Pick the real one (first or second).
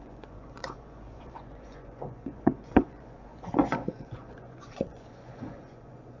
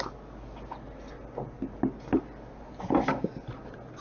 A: second